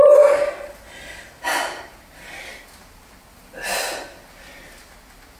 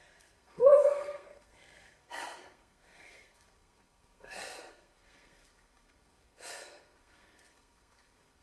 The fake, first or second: second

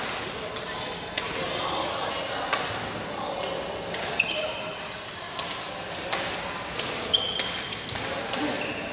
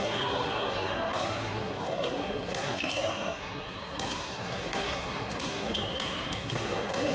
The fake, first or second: second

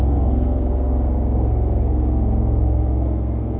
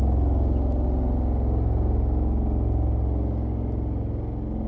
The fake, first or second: first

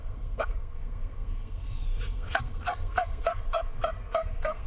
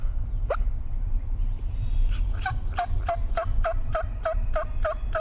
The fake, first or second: first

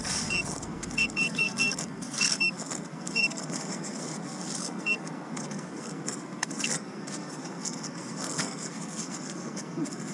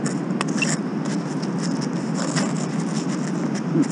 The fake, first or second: first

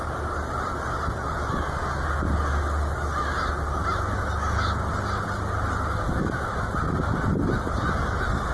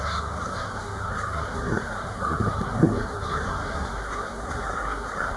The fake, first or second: second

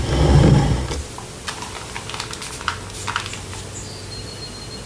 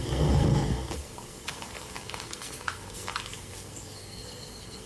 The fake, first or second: second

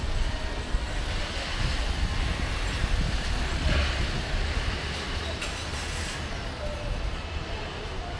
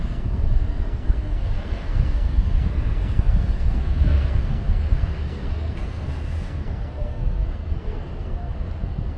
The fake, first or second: second